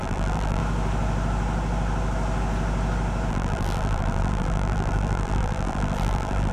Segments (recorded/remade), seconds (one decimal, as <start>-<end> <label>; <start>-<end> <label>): 0.0-0.6 remade; 0.6-3.3 recorded; 3.3-6.5 remade